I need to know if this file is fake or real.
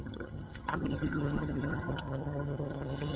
fake